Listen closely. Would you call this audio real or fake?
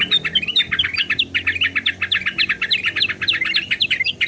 real